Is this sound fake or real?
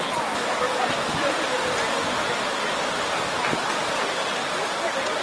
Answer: real